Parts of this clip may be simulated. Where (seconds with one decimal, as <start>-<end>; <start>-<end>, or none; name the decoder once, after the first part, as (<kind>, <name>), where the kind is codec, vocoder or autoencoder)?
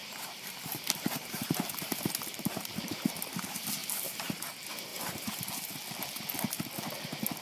0.0-3.1 (vocoder, BigVGAN v2); 3.8-4.5; 4.9-5.5